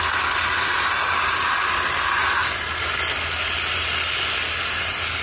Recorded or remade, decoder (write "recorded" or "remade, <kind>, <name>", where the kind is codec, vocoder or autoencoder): recorded